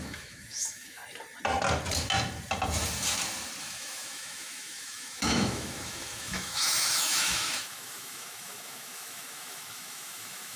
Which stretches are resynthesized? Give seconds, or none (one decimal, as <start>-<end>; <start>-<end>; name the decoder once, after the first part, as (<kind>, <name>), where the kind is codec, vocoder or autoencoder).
0.0-1.0 (autoencoder, DAC-VAE); 3.6-10.6